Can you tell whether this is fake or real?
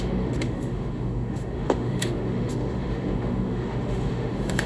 fake